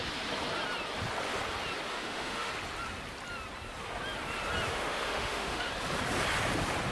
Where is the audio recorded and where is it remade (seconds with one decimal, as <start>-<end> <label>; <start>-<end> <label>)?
0.0-1.9 recorded; 1.9-2.5 remade; 2.5-4.7 recorded; 4.7-5.7 remade; 5.7-6.9 recorded